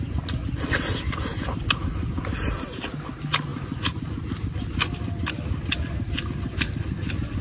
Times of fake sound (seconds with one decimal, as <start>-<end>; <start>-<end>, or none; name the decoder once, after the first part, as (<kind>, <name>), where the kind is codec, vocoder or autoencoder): none